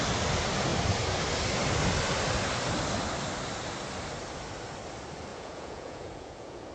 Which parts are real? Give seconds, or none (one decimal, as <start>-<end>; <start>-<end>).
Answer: 0.0-5.3